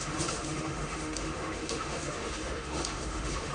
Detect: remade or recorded remade